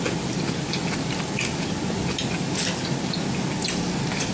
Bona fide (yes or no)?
yes